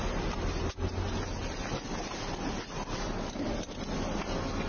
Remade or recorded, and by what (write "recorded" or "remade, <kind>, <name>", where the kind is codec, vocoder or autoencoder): recorded